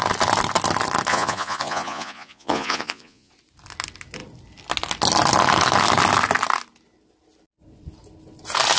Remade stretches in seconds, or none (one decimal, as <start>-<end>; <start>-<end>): 1.1-3.3